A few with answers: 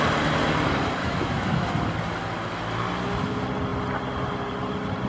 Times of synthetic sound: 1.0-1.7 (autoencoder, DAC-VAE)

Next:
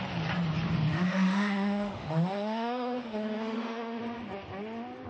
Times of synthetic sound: 0.9-4.0 (autoencoder, DAC-VAE)

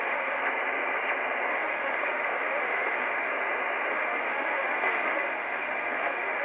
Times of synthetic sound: 0.0-0.4 (autoencoder, DAC-VAE); 1.5-3.3; 3.9-6.4